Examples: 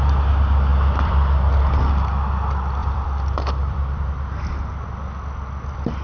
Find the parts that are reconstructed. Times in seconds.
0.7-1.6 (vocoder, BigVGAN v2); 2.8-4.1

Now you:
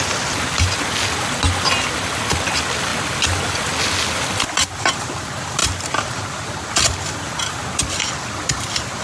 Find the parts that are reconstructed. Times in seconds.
none